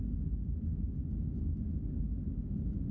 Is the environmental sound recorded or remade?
recorded